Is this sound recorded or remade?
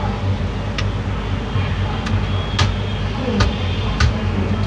recorded